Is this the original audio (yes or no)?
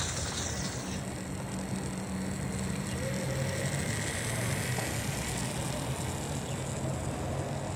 yes